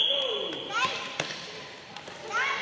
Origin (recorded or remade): remade